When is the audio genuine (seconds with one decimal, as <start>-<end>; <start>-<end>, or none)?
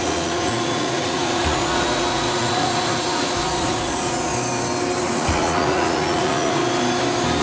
4.3-5.0; 6.6-7.4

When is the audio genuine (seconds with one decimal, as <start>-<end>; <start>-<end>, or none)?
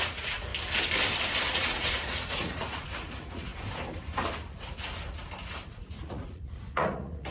0.5-1.5; 3.5-5.7